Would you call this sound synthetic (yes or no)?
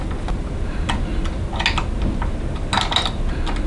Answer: no